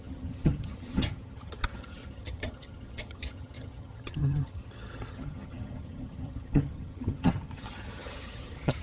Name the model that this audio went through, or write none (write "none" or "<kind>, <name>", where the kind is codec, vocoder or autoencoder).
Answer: vocoder, HiFi-GAN